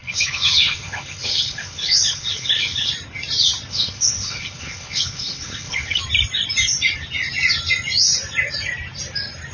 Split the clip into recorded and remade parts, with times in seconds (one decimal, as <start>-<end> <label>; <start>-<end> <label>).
0.0-2.9 remade; 2.9-3.7 recorded; 3.7-6.0 remade; 6.0-9.5 recorded